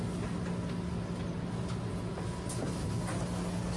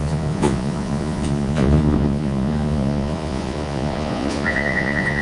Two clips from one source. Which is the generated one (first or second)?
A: second